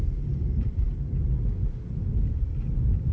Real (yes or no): yes